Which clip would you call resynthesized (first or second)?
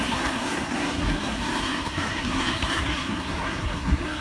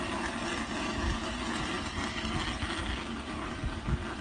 first